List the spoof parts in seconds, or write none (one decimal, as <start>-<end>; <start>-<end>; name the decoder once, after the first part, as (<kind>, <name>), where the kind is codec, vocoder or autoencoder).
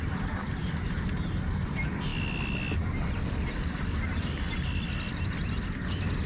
none